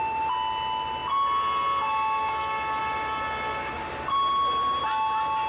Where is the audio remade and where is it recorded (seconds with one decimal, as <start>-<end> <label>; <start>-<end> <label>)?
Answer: 0.0-5.5 recorded